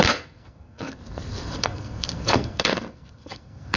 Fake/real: fake